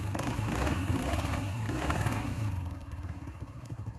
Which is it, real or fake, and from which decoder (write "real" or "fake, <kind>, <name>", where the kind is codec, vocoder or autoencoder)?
fake, codec, SNAC